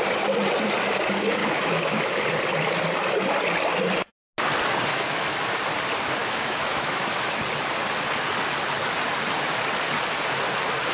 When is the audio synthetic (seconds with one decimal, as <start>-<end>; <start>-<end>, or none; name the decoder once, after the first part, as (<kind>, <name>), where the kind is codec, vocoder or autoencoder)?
1.4-2.0 (autoencoder, DAC-VAE); 4.9-5.5; 6.2-7.4